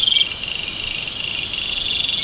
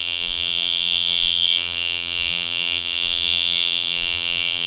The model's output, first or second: second